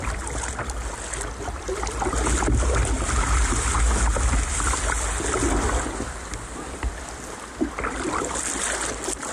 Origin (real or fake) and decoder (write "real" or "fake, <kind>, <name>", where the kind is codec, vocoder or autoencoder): real